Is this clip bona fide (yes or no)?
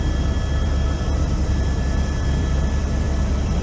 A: no